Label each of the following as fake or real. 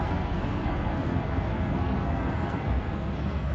fake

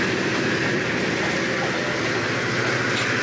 real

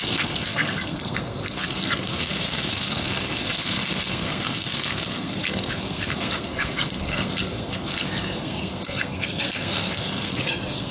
fake